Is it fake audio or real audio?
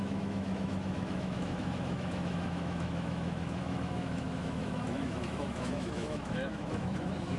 fake